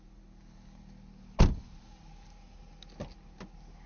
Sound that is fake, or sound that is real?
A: real